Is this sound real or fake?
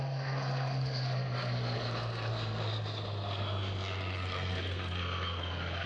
fake